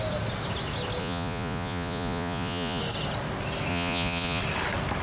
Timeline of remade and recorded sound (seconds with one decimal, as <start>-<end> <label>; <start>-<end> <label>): 0.0-1.0 recorded; 1.0-2.8 remade; 2.8-3.7 recorded; 3.7-4.4 remade; 4.4-5.0 recorded